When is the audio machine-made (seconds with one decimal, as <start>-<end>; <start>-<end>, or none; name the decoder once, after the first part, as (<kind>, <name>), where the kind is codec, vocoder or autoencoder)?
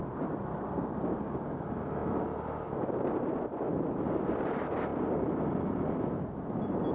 0.0-1.2 (vocoder, BigVGAN v2); 4.9-5.9